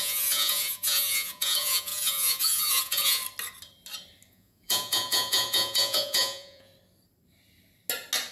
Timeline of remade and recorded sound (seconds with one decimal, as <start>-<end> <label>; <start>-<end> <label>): 0.0-3.2 remade; 3.2-4.3 recorded; 4.3-6.7 remade; 6.7-8.3 recorded

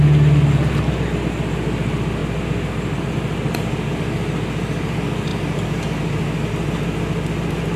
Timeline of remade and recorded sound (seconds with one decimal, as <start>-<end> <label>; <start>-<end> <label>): 0.0-7.8 recorded

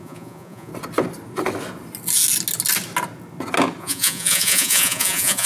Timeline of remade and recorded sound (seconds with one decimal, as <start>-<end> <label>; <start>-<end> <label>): 0.0-0.7 remade; 0.7-3.8 recorded; 3.8-5.5 remade